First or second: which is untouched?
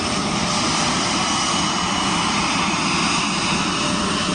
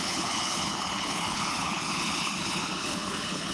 first